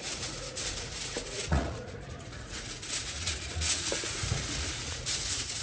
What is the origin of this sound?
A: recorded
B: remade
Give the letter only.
B